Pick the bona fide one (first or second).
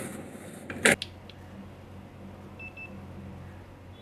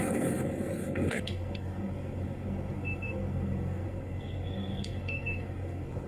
first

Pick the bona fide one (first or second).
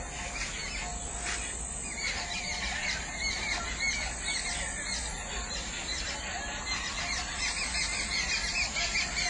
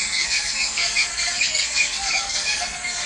first